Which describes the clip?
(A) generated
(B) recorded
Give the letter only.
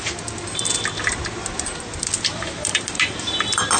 B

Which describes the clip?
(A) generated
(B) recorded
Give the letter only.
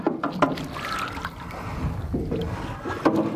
B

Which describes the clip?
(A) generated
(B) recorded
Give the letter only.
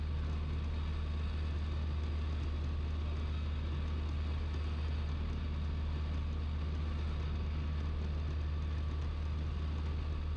B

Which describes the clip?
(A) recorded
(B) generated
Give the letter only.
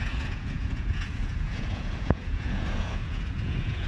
B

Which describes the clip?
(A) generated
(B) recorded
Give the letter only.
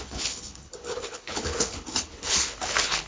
A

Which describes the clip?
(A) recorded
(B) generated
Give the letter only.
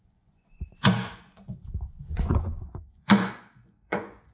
B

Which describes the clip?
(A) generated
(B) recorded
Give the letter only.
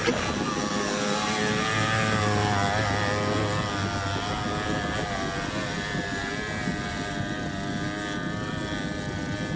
B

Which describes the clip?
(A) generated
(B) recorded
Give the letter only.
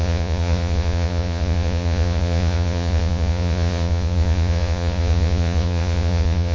A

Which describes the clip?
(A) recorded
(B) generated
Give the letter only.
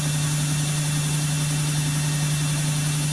A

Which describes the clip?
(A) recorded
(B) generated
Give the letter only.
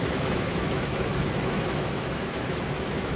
B